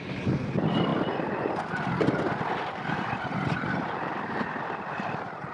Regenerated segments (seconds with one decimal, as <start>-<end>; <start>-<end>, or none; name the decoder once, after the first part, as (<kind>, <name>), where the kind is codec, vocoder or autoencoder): 0.0-0.9 (vocoder, BigVGAN v2); 4.2-5.5